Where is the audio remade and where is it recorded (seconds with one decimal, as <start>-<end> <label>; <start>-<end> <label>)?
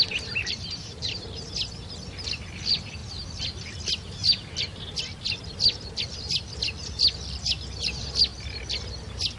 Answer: 0.0-0.4 recorded; 0.4-1.5 remade; 1.5-9.4 recorded